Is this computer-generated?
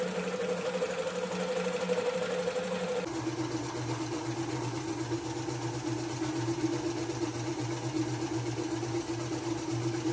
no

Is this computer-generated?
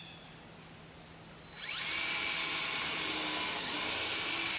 no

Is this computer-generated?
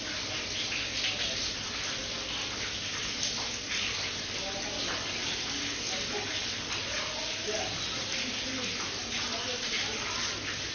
no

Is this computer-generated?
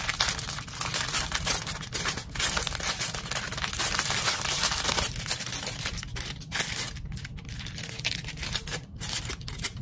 no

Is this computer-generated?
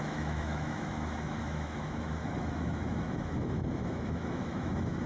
yes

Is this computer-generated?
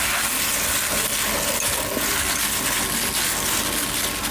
no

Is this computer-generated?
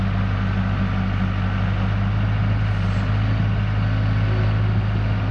no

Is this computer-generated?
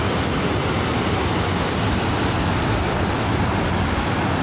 no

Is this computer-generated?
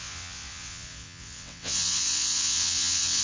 yes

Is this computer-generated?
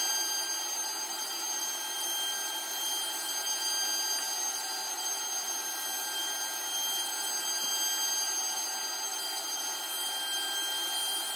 no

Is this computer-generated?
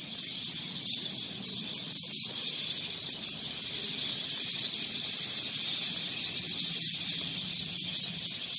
no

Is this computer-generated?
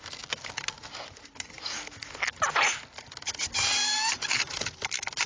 no